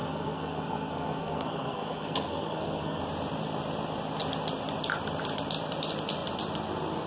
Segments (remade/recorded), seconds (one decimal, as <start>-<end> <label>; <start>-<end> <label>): 0.0-3.0 remade; 3.0-7.1 recorded